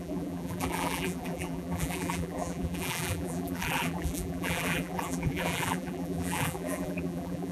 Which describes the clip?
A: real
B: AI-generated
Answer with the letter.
B